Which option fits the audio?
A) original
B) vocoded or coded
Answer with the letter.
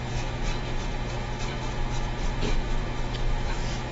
B